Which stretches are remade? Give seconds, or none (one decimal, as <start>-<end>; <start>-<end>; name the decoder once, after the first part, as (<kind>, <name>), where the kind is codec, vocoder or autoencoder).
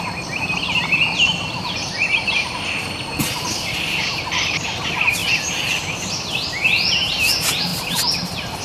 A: none